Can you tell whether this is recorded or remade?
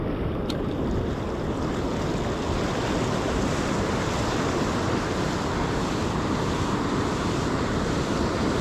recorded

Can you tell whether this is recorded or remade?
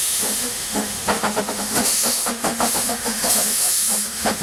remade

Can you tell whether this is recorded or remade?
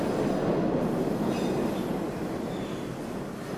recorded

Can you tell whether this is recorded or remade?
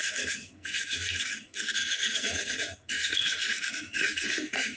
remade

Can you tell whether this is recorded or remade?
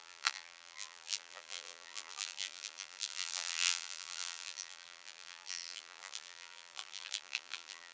remade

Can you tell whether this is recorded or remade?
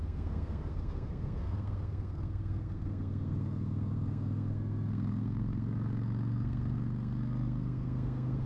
remade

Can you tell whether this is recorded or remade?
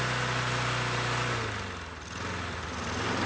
recorded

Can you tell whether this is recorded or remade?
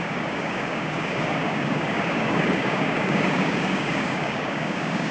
remade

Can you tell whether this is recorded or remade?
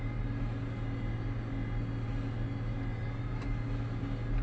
recorded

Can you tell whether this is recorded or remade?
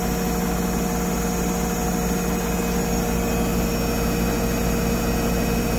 recorded